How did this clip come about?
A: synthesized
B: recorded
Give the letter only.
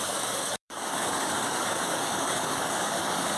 A